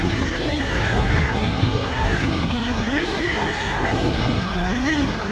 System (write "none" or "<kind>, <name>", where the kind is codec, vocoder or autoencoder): codec, SNAC